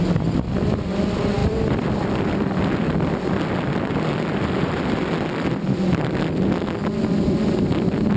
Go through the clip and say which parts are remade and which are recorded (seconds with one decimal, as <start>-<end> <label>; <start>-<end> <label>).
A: 0.0-1.4 recorded; 1.4-6.1 remade; 6.1-8.2 recorded